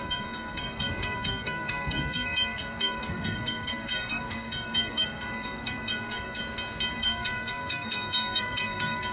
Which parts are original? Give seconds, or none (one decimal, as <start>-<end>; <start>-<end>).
6.4-6.9